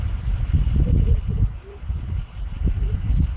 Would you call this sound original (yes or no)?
yes